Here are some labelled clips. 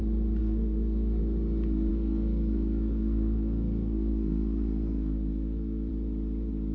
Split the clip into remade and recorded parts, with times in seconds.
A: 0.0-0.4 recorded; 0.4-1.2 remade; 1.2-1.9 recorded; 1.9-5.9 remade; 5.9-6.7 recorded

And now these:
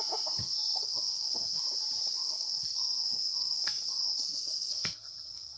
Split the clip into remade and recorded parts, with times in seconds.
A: 0.0-0.4 recorded; 0.4-1.6 remade; 1.6-2.2 recorded; 2.2-5.6 remade

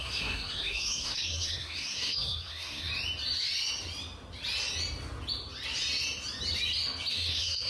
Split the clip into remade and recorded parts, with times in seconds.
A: 0.0-2.9 remade; 2.9-7.1 recorded; 7.1-7.7 remade

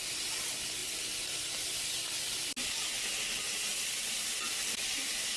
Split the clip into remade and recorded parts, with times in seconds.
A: 0.0-5.4 recorded

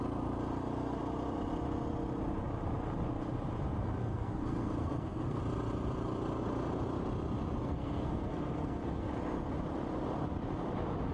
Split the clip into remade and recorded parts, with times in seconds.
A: 0.0-4.0 recorded; 4.0-5.4 remade; 5.4-7.6 recorded; 7.6-9.1 remade; 9.1-11.1 recorded

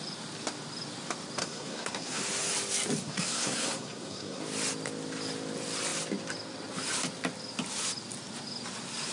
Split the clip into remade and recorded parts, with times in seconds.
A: 0.0-1.4 recorded; 1.4-2.2 remade; 2.2-3.0 recorded; 3.0-4.4 remade; 4.4-9.1 recorded